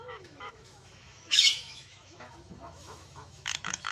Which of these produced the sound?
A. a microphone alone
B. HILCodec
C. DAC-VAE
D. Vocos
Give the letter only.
C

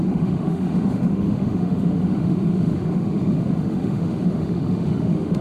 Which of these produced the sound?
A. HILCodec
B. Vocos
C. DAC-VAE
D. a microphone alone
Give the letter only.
C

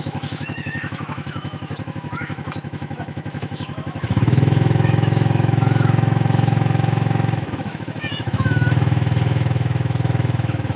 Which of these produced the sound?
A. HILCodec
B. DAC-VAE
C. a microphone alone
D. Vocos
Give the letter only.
B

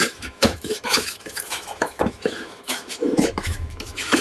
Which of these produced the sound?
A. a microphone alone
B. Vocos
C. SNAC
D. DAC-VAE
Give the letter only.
D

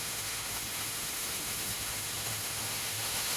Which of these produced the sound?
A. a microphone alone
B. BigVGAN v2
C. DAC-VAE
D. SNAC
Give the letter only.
C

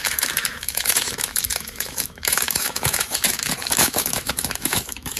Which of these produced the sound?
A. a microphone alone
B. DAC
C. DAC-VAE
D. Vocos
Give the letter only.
C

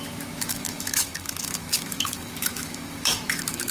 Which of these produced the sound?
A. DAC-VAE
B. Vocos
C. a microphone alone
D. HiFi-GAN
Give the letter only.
A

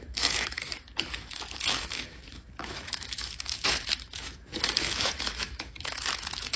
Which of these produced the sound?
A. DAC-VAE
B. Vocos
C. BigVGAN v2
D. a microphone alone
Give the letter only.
A